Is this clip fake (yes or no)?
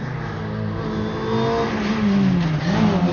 no